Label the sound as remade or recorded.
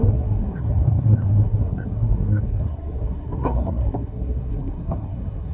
remade